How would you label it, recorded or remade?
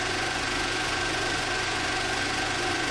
remade